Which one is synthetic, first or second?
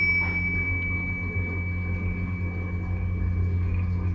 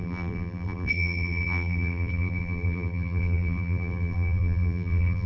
second